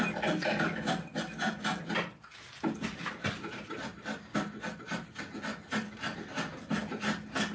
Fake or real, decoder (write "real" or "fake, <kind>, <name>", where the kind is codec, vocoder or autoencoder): real